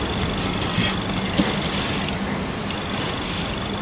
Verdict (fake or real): real